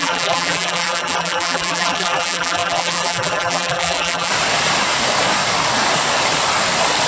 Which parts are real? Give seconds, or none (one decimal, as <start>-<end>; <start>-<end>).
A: 4.3-7.1